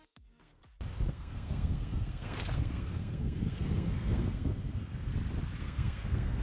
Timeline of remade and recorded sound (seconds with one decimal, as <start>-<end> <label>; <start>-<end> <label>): 0.0-0.6 remade; 0.6-1.1 recorded; 1.1-5.1 remade; 5.1-5.6 recorded; 5.6-6.4 remade